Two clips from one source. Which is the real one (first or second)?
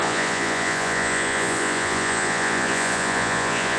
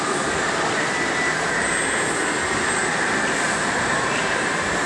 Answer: second